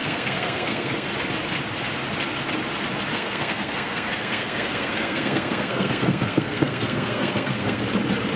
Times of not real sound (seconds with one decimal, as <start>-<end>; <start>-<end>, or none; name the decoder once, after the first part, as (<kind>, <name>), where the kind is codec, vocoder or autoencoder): 0.0-1.1 (codec, SNAC); 3.1-7.8